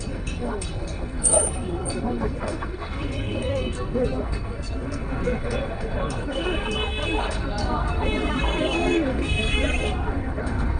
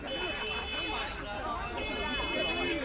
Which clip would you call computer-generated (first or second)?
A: first